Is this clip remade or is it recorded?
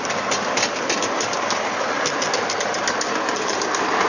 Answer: recorded